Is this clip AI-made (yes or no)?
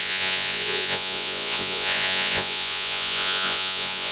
yes